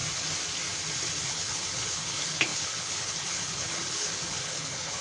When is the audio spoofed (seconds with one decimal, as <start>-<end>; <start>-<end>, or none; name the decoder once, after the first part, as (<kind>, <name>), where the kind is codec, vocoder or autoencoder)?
1.2-5.0 (codec, HILCodec)